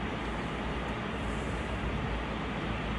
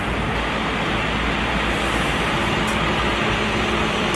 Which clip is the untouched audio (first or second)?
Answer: second